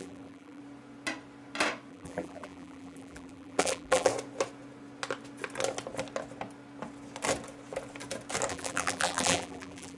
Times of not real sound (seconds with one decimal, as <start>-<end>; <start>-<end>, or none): 0.0-0.6; 1.9-4.1; 8.5-10.0